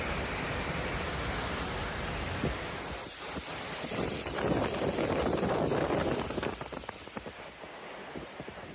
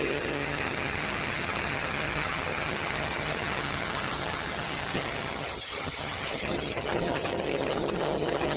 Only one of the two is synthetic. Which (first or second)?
second